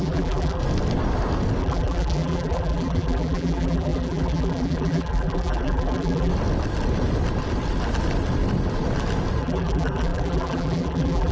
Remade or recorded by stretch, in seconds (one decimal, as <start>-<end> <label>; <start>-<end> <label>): 0.0-0.6 remade; 0.6-1.6 recorded; 1.6-6.3 remade; 6.3-9.4 recorded; 9.4-11.3 remade